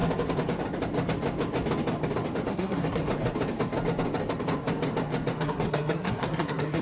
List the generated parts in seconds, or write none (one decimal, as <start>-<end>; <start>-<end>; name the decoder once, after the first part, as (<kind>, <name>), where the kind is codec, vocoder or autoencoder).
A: 2.5-3.0 (codec, SNAC); 5.4-6.8